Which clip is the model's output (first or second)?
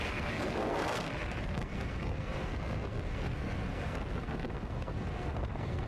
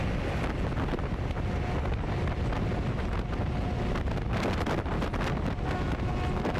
first